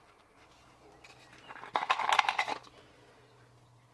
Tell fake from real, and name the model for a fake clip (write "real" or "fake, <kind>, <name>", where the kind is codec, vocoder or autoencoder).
real